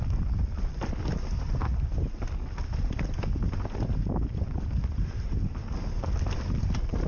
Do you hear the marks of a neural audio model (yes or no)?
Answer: no